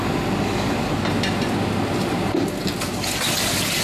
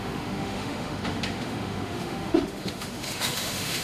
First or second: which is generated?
second